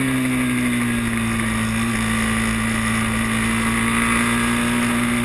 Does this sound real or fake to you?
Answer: real